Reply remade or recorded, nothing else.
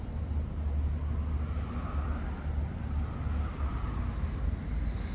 recorded